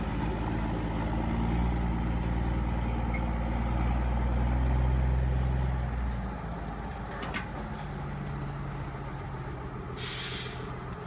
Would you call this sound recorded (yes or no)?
yes